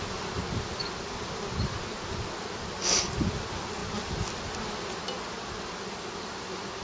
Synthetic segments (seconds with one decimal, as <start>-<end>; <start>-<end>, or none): none